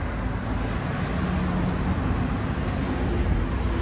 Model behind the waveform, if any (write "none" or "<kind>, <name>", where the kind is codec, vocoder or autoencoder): none